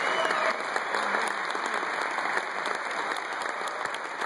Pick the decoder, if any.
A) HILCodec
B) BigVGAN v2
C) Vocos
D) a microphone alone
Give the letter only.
D